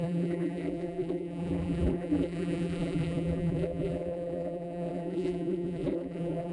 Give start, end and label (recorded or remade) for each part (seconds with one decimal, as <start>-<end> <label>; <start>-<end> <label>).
0.0-6.5 remade